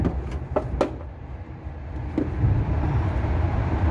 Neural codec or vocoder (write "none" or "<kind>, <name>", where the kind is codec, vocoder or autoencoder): none